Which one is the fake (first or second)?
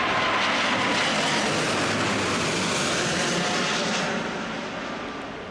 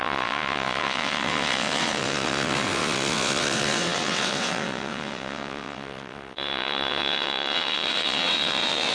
second